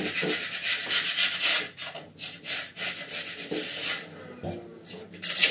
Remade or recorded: recorded